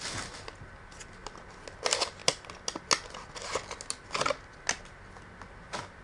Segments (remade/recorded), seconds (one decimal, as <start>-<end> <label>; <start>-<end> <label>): 0.0-6.0 recorded